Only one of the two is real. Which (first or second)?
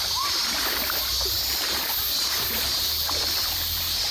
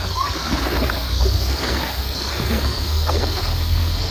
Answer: first